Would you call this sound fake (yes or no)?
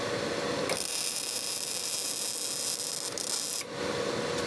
no